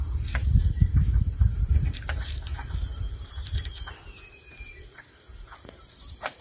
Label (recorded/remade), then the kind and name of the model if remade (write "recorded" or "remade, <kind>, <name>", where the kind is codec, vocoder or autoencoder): remade, vocoder, BigVGAN v2